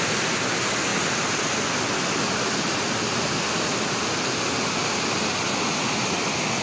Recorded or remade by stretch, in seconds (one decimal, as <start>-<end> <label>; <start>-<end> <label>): 0.0-6.6 recorded